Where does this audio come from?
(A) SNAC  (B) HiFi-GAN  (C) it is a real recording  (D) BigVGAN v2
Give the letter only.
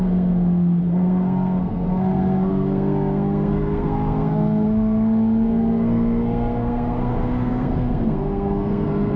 A